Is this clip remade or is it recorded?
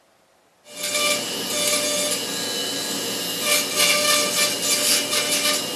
recorded